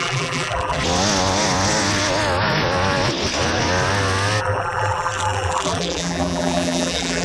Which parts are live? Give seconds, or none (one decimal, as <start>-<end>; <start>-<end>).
0.8-4.4